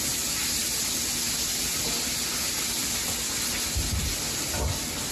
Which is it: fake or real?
real